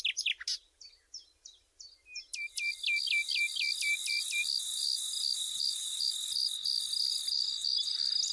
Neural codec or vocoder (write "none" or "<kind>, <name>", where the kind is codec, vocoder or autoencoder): none